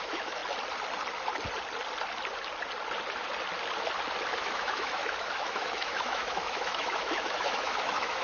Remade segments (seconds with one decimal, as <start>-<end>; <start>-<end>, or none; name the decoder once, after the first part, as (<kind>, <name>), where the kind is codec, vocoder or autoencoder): 0.0-0.4 (autoencoder, DAC-VAE); 4.3-8.2